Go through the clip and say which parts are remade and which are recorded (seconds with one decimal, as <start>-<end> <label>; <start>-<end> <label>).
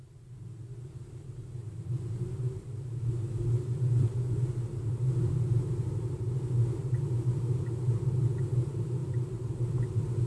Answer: 0.0-1.6 recorded; 1.6-3.3 remade; 3.3-10.3 recorded